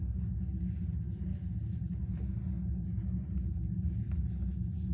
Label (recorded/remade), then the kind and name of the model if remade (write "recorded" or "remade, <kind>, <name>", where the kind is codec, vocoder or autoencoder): recorded